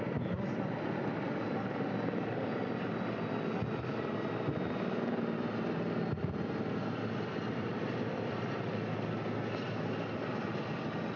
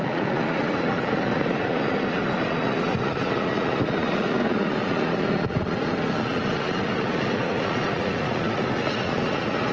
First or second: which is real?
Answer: first